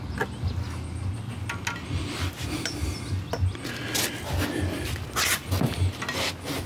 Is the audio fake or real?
real